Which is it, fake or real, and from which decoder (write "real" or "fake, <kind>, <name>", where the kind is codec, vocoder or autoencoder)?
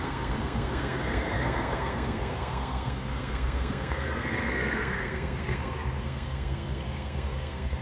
fake, codec, SNAC